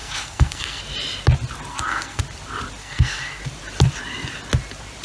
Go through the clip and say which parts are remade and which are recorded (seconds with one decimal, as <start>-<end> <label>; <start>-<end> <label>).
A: 0.0-0.8 remade; 0.8-1.7 recorded; 1.7-2.2 remade; 2.2-2.8 recorded; 2.8-3.4 remade; 3.4-5.0 recorded